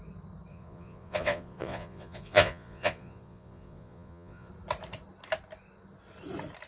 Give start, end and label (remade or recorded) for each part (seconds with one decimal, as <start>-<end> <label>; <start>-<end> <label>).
0.0-0.5 recorded; 0.5-4.5 remade; 4.5-6.7 recorded